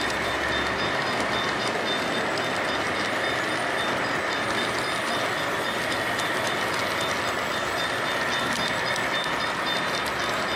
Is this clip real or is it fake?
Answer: real